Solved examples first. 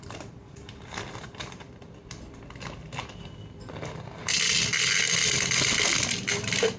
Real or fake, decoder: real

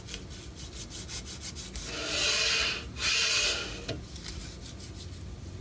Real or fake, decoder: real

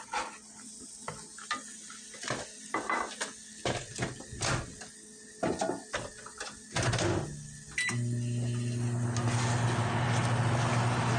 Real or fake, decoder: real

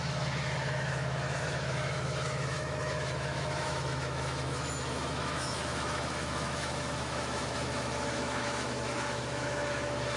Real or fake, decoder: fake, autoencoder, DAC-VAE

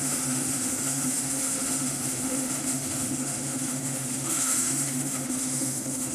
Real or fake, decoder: fake, autoencoder, DAC-VAE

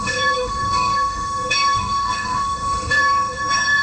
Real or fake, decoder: fake, autoencoder, DAC-VAE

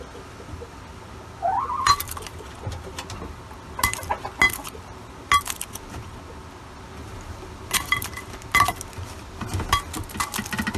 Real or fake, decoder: real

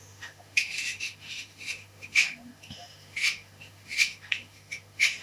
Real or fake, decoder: fake, autoencoder, DAC-VAE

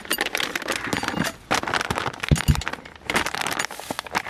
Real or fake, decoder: real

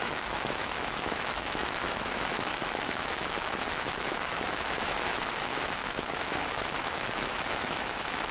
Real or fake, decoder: fake, autoencoder, DAC-VAE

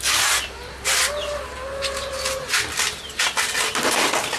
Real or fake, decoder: real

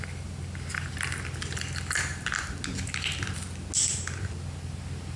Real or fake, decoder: real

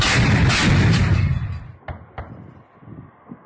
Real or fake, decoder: real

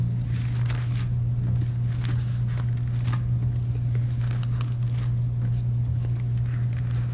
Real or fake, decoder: real